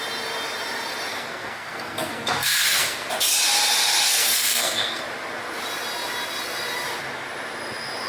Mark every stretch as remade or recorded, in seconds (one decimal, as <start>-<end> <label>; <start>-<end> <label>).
0.0-1.1 recorded; 1.1-3.1 remade; 3.1-4.2 recorded; 4.2-5.0 remade; 5.0-8.1 recorded